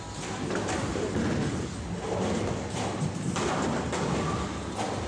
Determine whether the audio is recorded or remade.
recorded